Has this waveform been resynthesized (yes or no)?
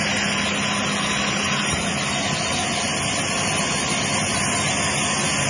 no